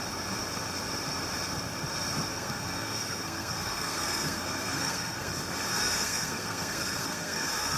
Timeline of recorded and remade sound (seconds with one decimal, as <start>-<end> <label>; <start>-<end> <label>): 0.0-2.3 recorded; 2.3-5.3 remade; 5.3-5.7 recorded; 5.7-7.8 remade